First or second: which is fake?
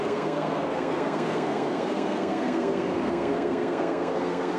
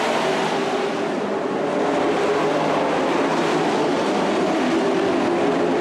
first